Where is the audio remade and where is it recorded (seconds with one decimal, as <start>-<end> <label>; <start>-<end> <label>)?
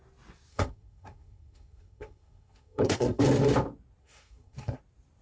0.0-0.5 recorded; 0.5-3.2 remade; 3.2-4.0 recorded; 4.0-4.8 remade; 4.8-5.2 recorded